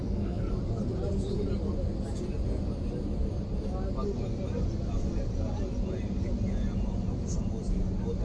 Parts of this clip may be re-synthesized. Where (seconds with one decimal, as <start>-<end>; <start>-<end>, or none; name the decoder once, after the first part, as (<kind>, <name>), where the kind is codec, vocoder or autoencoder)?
0.0-0.5 (codec, SNAC)